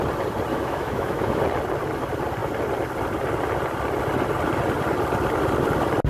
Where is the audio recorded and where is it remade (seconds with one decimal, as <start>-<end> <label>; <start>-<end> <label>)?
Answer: 0.0-0.5 recorded; 0.5-1.4 remade; 1.4-6.1 recorded